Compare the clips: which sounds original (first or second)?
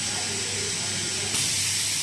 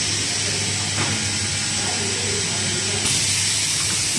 second